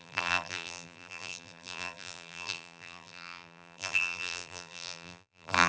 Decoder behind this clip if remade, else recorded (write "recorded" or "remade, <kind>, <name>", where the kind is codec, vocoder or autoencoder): remade, vocoder, BigVGAN v2